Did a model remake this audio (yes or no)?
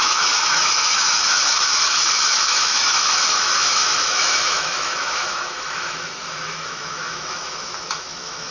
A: yes